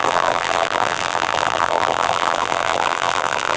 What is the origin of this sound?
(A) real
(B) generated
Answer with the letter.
B